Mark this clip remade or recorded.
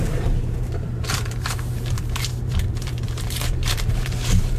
remade